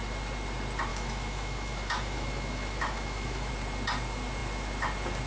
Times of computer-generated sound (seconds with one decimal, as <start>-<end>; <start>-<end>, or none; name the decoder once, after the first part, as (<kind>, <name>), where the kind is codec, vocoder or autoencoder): 0.9-3.5 (autoencoder, DAC-VAE)